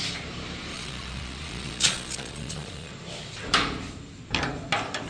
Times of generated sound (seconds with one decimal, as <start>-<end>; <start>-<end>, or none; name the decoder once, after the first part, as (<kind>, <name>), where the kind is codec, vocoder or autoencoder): 0.7-2.9 (vocoder, Vocos)